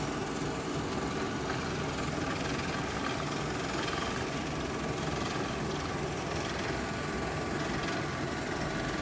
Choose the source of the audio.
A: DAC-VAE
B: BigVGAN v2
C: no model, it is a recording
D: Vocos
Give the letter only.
C